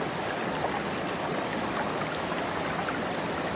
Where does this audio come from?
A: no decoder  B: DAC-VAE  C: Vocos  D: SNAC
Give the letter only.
A